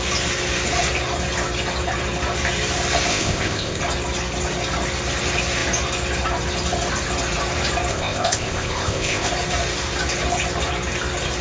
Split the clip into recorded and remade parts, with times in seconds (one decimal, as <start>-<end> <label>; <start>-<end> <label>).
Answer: 0.0-3.1 recorded; 3.1-3.8 remade; 3.8-7.9 recorded; 7.9-9.3 remade; 9.3-11.4 recorded